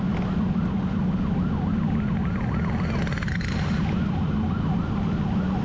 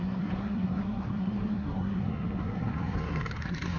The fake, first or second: second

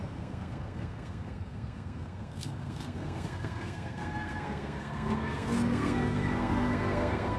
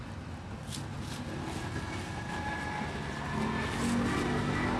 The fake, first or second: first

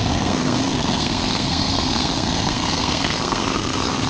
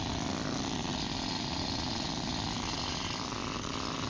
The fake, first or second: first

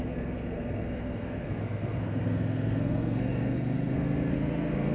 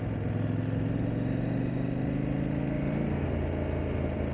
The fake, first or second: first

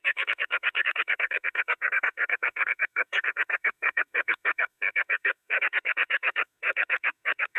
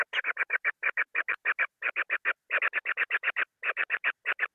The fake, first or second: first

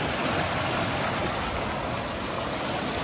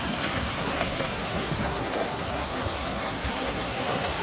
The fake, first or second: second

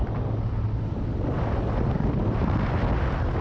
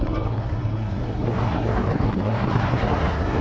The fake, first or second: second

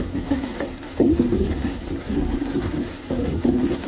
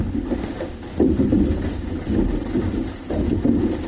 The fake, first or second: first